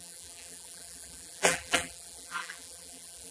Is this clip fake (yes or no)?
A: yes